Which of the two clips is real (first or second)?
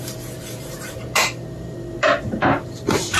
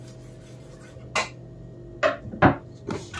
second